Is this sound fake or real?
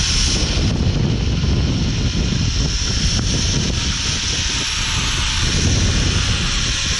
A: real